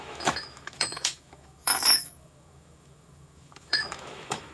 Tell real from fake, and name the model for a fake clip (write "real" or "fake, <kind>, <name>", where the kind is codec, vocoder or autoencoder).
fake, autoencoder, DAC-VAE